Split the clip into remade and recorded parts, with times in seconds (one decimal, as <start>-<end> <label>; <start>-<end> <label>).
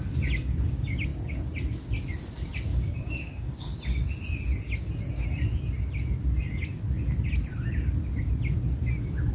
0.0-2.7 recorded; 2.7-3.7 remade; 3.7-9.3 recorded